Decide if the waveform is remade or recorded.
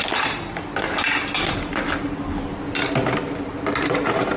recorded